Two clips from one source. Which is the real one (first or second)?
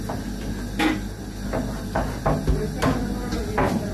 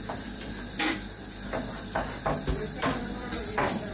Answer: first